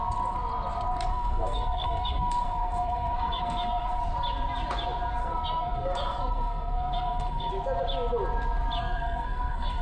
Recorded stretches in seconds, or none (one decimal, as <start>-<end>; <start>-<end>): 0.0-1.1; 4.0-5.2; 7.5-8.8